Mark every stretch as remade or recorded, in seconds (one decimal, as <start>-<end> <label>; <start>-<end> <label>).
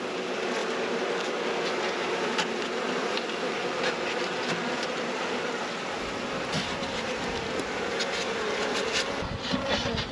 0.0-10.1 recorded